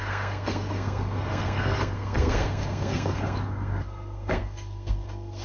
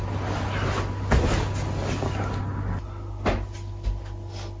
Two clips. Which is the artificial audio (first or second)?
first